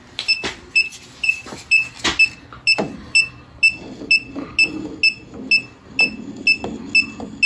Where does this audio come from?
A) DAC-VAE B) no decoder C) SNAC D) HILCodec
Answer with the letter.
B